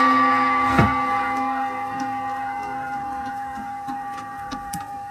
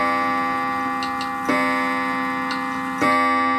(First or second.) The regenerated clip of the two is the first